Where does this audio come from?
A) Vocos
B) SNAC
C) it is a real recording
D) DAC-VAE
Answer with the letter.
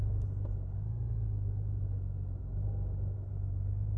C